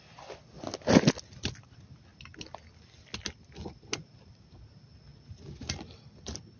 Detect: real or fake real